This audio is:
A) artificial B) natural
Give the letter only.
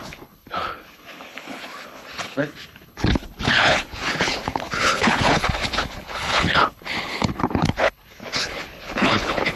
A